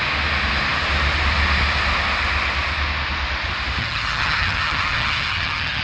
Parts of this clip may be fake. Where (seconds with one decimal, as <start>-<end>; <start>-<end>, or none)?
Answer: 3.8-5.8